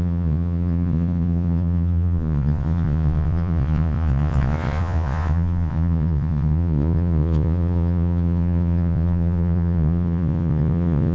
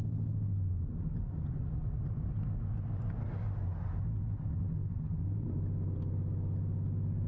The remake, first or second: first